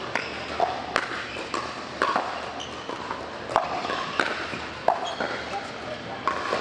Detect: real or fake real